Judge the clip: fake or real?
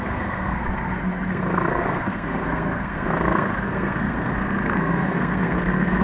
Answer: fake